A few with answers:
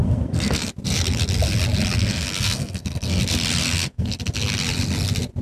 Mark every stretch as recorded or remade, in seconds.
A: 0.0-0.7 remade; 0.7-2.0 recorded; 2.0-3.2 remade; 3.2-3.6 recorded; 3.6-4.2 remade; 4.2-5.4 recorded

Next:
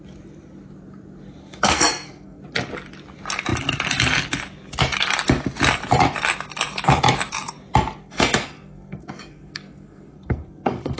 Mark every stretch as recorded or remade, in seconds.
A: 0.0-1.4 recorded; 1.4-2.4 remade; 2.4-8.0 recorded; 8.0-11.0 remade

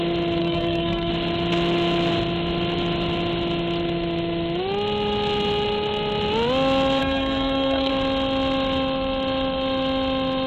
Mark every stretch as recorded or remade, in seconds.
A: 0.0-0.4 recorded; 0.4-1.1 remade; 1.1-7.0 recorded; 7.0-7.9 remade; 7.9-10.5 recorded

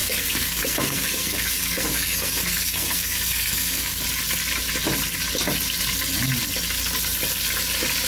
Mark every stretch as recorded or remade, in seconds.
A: 0.0-4.0 remade; 4.0-8.1 recorded